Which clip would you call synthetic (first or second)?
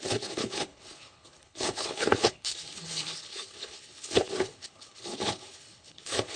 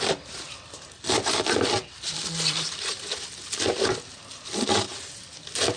first